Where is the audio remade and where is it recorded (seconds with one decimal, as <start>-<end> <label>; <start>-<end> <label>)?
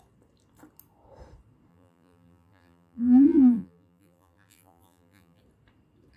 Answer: 0.0-1.7 recorded; 1.7-5.4 remade; 5.4-6.2 recorded